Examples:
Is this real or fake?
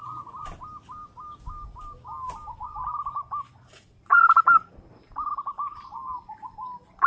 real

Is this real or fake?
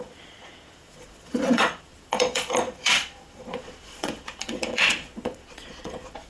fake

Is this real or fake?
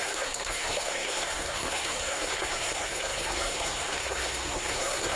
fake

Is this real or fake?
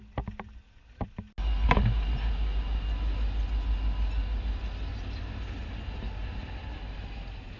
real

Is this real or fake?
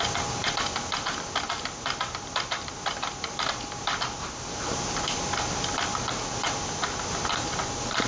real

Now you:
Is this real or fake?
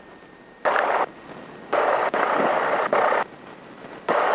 real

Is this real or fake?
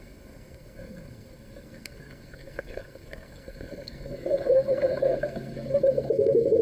fake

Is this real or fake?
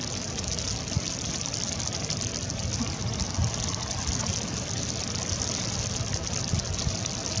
real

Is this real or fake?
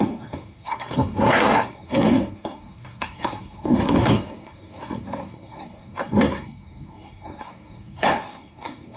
fake